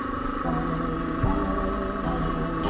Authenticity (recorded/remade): recorded